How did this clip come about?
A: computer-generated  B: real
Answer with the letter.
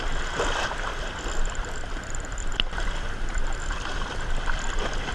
B